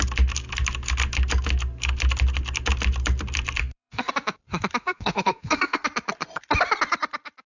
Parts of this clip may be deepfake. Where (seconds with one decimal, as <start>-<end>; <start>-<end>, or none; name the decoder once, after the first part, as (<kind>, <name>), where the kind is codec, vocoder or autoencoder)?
3.6-4.1 (codec, SNAC); 4.8-5.8